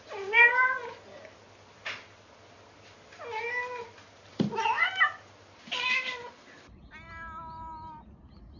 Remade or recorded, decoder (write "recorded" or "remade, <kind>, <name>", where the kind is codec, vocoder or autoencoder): recorded